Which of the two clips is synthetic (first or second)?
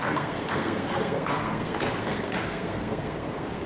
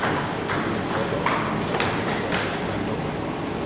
first